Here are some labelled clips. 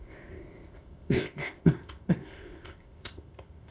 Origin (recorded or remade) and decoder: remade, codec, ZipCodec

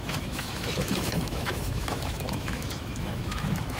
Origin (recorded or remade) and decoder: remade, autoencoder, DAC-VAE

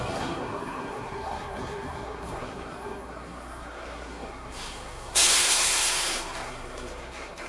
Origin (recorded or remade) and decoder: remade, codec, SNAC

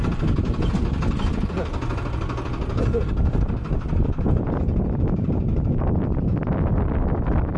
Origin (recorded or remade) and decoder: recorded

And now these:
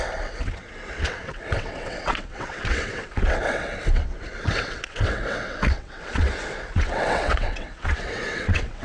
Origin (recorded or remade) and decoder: remade, vocoder, WaveNeXt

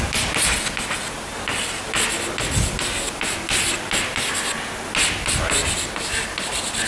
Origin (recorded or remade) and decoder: recorded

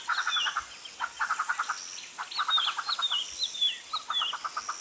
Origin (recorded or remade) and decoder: recorded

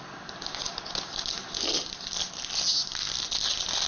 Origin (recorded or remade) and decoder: recorded